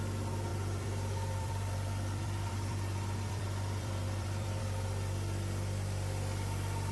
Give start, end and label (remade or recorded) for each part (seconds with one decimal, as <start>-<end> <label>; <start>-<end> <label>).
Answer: 0.0-0.5 recorded; 0.5-4.6 remade; 4.6-6.9 recorded